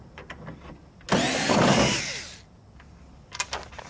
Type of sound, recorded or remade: recorded